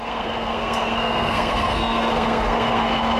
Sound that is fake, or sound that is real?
fake